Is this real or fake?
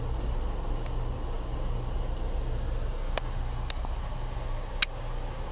real